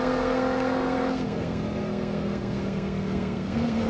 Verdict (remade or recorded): remade